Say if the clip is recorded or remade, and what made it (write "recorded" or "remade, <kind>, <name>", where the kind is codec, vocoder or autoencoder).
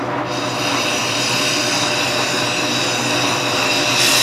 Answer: recorded